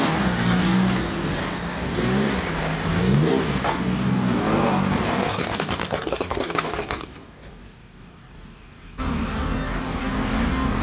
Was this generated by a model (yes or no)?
yes